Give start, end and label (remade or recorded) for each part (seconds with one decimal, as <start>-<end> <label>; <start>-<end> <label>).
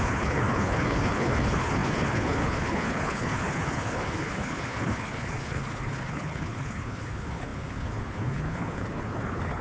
0.0-9.6 remade